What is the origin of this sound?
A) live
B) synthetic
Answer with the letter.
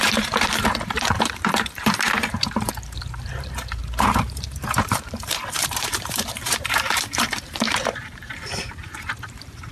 B